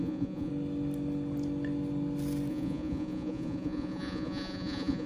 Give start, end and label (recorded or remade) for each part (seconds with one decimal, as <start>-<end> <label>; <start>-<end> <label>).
0.0-0.5 remade; 0.5-2.5 recorded; 2.5-5.1 remade